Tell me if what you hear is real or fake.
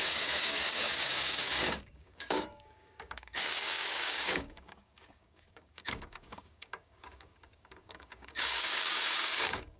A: fake